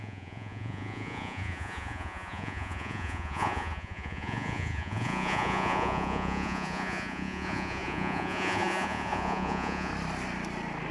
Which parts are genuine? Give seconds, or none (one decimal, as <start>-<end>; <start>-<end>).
9.9-10.9